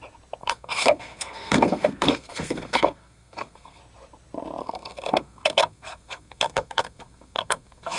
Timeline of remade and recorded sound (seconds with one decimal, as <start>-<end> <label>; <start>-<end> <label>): 0.0-0.4 recorded; 0.4-3.8 remade; 3.8-4.6 recorded; 4.6-8.0 remade